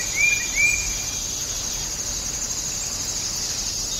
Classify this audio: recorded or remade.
recorded